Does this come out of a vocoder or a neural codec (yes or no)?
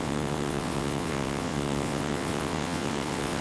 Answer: yes